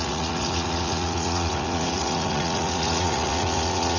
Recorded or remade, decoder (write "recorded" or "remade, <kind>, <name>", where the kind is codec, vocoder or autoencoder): remade, vocoder, Vocos